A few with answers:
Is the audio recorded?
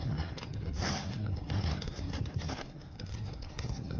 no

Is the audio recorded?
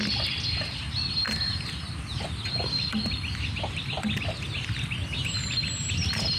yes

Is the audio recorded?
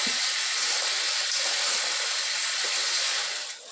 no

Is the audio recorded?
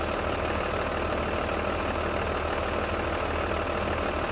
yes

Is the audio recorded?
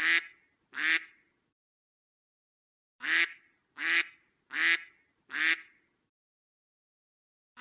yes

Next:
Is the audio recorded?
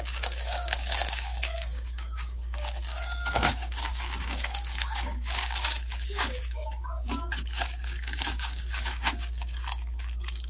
no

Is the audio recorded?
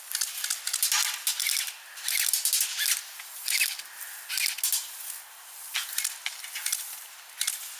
yes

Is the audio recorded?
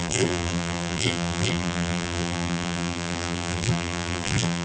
no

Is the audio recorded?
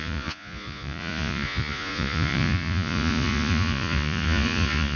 no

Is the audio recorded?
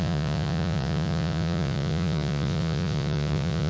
no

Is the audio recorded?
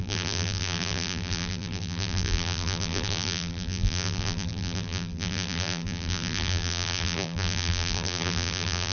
no